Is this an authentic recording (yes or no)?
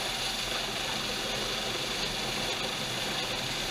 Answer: yes